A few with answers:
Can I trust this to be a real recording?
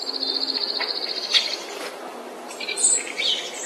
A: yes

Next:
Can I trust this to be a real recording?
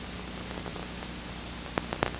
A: yes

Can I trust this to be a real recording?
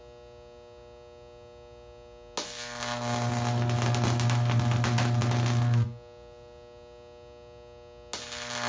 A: yes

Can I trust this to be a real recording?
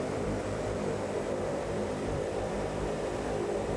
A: no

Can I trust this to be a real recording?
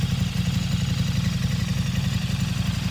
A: yes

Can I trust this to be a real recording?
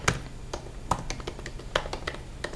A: yes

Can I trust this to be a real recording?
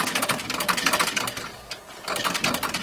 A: no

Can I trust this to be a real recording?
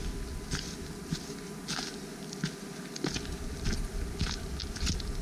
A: yes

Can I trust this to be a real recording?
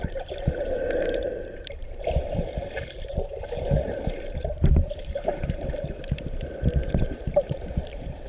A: no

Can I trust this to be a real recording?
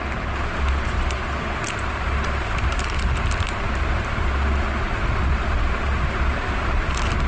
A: yes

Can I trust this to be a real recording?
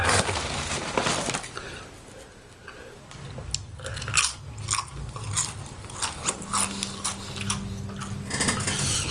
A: yes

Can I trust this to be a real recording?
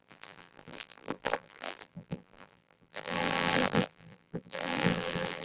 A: no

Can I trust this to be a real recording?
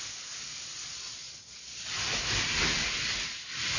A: no